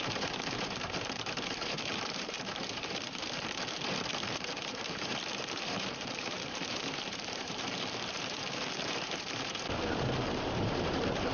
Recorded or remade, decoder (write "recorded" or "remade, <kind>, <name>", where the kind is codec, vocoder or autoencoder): remade, vocoder, BigVGAN v2